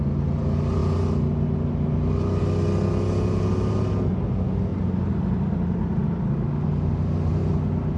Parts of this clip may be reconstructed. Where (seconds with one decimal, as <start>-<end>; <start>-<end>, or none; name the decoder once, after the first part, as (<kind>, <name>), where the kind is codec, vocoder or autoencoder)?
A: none